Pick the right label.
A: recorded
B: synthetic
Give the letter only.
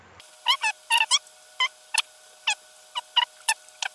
A